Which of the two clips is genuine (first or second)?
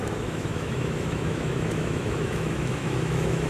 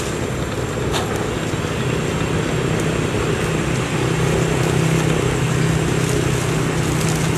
second